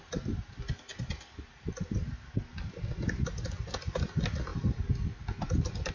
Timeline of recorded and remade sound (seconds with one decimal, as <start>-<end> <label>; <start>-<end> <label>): 0.0-5.9 recorded